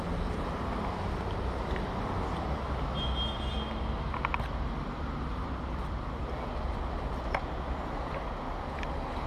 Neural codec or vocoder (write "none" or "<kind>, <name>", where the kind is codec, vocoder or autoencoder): none